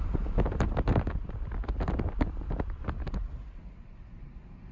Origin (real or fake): real